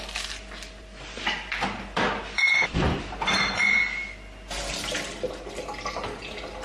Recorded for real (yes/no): yes